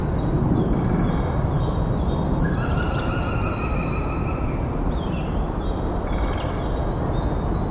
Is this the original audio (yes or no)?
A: yes